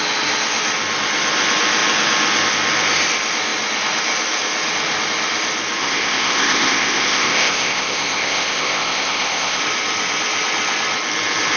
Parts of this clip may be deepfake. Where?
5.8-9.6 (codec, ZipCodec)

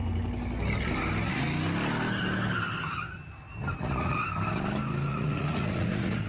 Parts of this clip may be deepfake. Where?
3.8-4.2 (vocoder, Vocos); 5.1-6.3

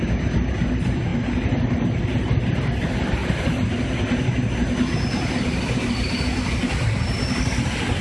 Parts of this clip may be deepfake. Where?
none

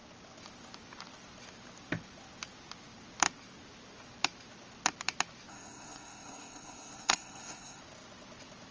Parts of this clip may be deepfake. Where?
5.5-7.8 (codec, SNAC)